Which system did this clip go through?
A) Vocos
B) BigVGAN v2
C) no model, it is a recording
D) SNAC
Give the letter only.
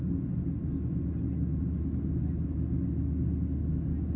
C